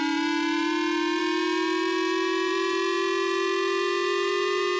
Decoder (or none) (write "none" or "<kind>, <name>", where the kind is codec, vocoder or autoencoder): vocoder, BigVGAN v2